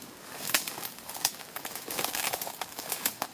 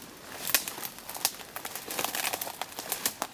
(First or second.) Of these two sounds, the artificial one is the first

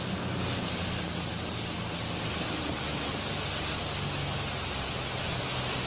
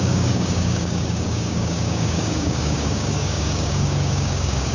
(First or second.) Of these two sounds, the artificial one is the second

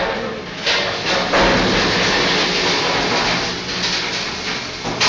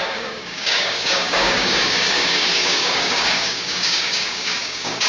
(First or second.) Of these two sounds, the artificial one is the second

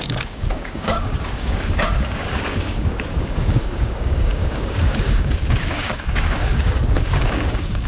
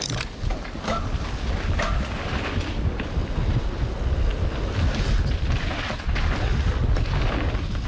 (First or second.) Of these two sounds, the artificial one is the first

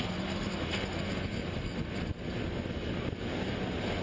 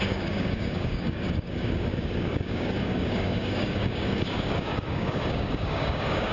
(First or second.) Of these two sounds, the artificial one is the second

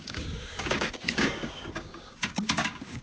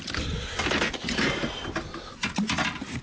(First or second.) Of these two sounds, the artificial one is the first